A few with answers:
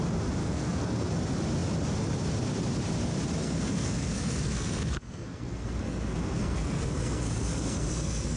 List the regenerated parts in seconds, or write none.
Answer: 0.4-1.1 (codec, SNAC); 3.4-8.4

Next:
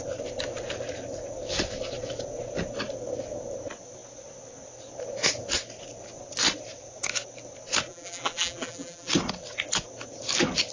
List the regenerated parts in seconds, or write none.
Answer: 7.9-9.1 (vocoder, BigVGAN v2)

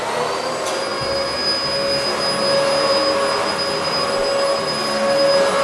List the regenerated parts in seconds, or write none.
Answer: none

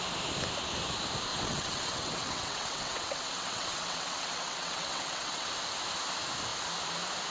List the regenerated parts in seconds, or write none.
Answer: 1.3-5.5 (vocoder, WaveNeXt)